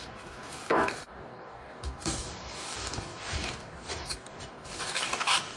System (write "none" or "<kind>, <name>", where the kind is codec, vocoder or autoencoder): codec, DAC